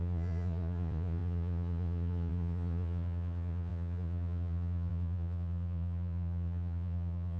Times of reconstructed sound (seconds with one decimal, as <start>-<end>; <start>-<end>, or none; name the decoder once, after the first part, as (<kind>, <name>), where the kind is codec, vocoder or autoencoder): 0.0-7.4 (vocoder, Vocos)